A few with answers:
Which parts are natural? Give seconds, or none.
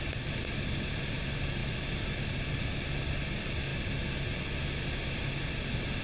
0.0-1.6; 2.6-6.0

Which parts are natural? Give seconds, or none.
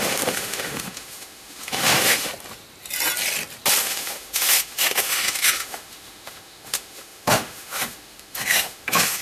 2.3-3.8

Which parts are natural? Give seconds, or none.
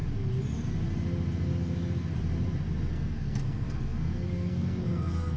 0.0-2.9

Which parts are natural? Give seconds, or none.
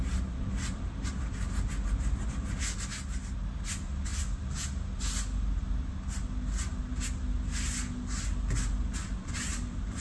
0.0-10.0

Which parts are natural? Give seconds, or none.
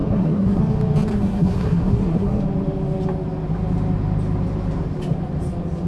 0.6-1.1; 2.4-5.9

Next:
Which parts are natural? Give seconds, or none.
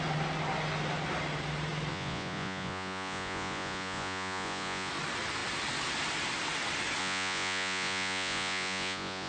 0.0-1.9; 4.9-7.0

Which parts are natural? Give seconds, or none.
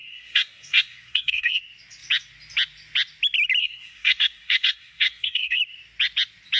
1.6-3.6; 5.6-6.6